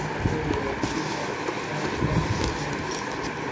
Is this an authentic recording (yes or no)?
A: yes